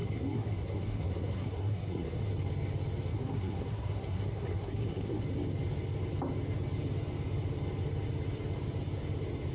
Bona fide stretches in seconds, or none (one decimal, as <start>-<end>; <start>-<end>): 2.2-3.1; 5.2-9.5